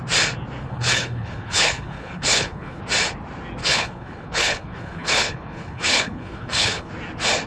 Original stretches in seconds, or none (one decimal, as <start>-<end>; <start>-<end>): 0.0-0.6; 2.8-3.6; 6.9-7.5

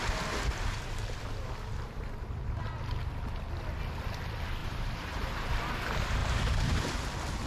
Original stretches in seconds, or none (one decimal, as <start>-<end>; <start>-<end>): 0.0-4.6; 5.5-6.2; 6.8-7.5

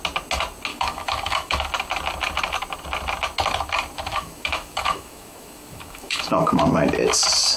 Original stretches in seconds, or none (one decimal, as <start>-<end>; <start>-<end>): 0.0-0.7; 1.7-4.1; 6.6-7.6

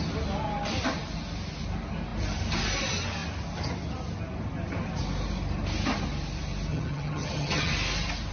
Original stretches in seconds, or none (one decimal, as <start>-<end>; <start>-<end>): 0.0-6.7; 7.7-8.3